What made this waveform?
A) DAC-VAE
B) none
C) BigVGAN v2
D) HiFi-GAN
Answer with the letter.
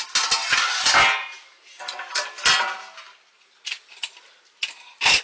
B